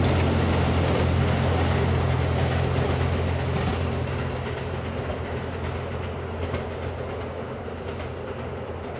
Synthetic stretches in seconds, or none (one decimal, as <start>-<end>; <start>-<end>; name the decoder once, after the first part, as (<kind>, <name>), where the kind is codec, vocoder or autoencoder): none